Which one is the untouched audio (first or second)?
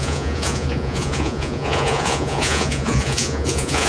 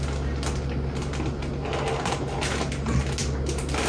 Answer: second